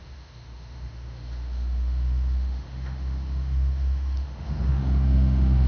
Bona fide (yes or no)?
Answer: no